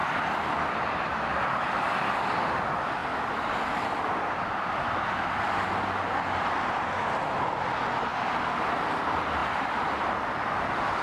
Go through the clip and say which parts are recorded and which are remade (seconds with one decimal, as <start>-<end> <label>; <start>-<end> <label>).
0.0-8.1 remade; 8.1-9.0 recorded; 9.0-11.0 remade